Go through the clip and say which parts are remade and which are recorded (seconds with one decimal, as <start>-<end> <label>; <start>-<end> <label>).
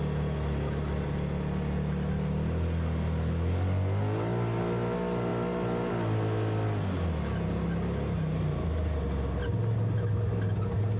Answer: 0.0-11.0 recorded